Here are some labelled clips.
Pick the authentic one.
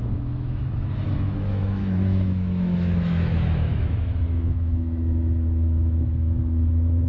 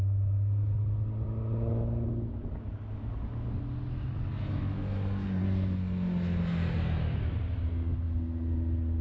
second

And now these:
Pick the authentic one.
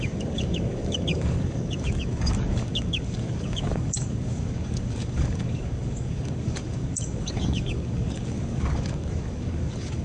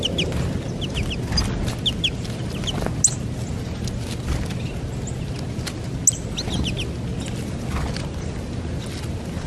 second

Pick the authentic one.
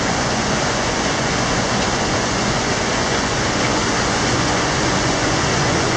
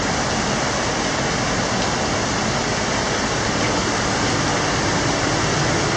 second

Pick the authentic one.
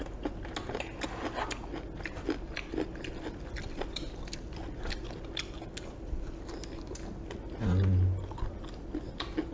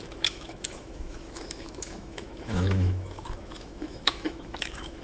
first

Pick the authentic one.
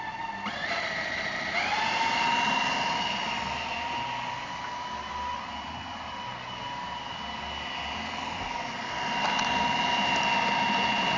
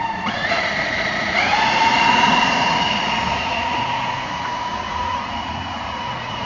first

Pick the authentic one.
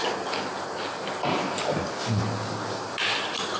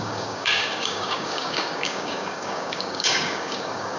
first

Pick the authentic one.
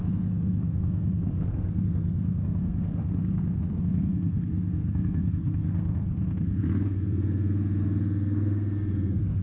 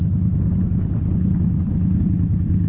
second